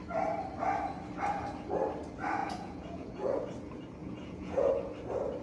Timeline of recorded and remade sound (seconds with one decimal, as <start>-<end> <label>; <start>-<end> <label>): 0.0-2.4 recorded; 2.4-3.4 remade; 3.4-4.0 recorded; 4.0-4.7 remade; 4.7-5.4 recorded